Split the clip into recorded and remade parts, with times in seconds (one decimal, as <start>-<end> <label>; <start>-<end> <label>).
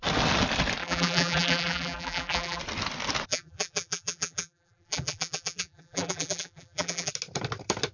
0.0-0.8 recorded; 0.8-2.6 remade; 2.6-3.3 recorded; 3.3-7.1 remade; 7.1-7.9 recorded